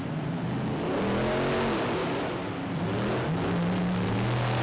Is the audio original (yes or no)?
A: yes